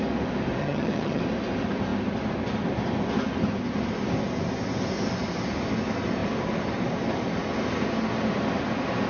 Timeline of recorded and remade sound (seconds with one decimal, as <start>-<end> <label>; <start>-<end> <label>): 0.0-0.6 recorded; 0.6-1.2 remade; 1.2-9.1 recorded